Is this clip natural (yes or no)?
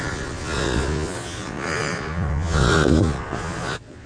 no